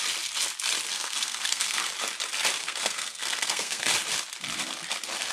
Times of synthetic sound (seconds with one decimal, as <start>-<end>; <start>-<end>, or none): 0.9-1.8; 2.6-3.8